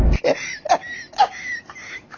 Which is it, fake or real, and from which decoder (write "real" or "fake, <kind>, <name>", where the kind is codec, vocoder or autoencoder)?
real